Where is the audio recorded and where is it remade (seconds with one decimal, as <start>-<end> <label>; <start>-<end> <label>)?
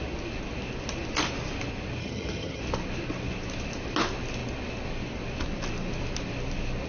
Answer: 0.0-2.0 recorded; 2.0-2.6 remade; 2.6-6.9 recorded